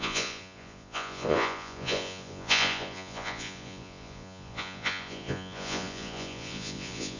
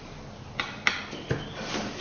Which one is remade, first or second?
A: first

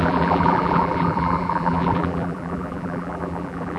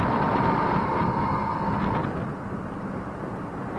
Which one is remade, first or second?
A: first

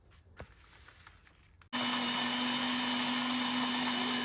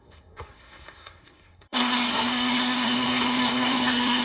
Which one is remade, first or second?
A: second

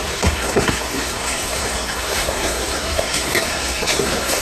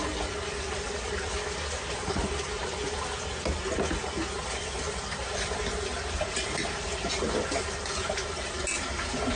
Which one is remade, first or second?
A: first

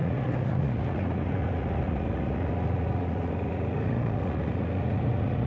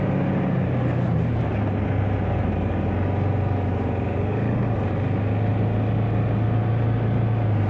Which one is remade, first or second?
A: first